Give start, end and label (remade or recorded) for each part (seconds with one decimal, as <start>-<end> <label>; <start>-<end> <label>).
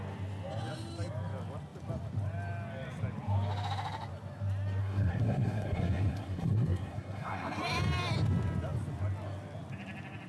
0.0-4.8 recorded; 4.8-7.6 remade; 7.6-10.3 recorded